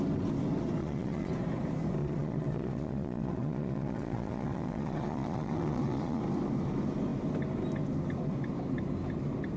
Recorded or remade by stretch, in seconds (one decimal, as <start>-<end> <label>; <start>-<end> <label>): 0.0-0.8 recorded; 0.8-1.3 remade; 1.3-2.0 recorded; 2.0-6.2 remade; 6.2-9.6 recorded